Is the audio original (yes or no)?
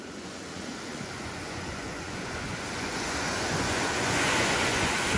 no